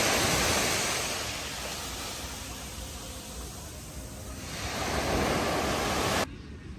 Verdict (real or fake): real